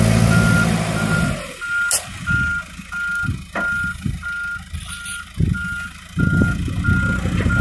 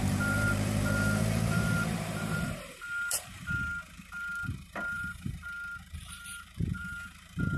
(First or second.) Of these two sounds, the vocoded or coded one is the second